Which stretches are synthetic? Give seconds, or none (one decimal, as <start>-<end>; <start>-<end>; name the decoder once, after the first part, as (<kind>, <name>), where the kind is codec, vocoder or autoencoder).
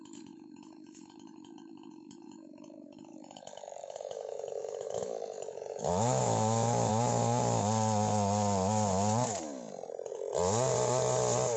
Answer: 0.0-6.9 (autoencoder, DAC-VAE)